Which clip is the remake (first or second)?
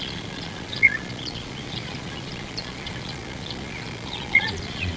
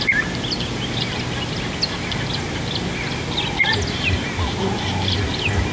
first